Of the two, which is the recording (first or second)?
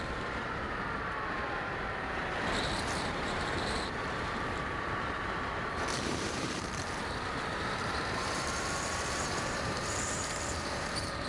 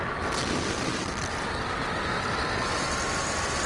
second